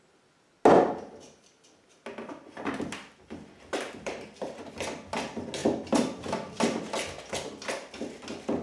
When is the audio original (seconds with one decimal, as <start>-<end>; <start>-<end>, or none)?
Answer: 0.0-2.0; 4.7-5.6; 6.6-8.6